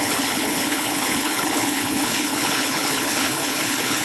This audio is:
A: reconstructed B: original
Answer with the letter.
A